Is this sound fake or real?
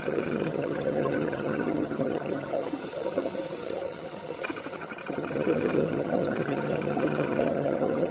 fake